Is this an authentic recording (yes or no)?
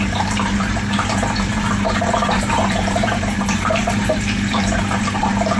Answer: no